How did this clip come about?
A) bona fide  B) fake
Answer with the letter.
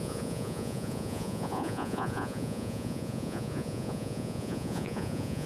B